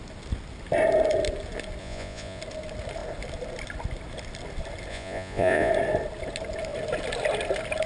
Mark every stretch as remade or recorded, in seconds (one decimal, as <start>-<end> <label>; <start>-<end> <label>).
0.0-1.8 recorded; 1.8-2.4 remade; 2.4-4.9 recorded; 4.9-5.7 remade; 5.7-7.9 recorded